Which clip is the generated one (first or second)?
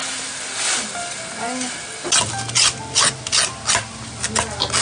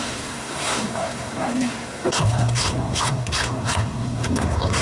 second